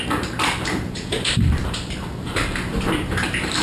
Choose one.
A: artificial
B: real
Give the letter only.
A